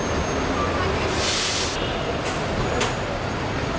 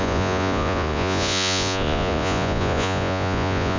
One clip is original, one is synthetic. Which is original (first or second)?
first